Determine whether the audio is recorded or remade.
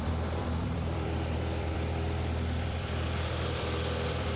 remade